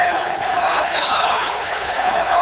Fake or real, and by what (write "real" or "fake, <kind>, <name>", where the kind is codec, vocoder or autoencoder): fake, codec, HILCodec